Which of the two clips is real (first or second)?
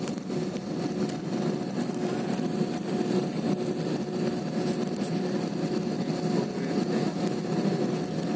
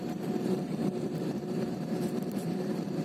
first